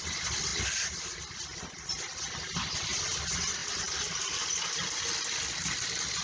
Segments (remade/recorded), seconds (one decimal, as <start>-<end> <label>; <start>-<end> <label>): 0.0-0.5 recorded; 0.5-1.2 remade; 1.2-3.6 recorded; 3.6-5.1 remade; 5.1-6.2 recorded